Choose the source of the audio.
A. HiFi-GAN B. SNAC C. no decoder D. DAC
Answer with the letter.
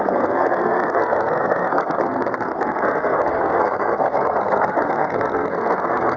B